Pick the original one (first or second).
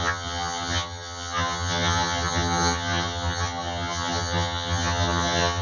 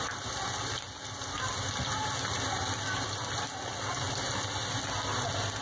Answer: second